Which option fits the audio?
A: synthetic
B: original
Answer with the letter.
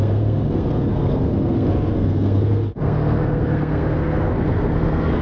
A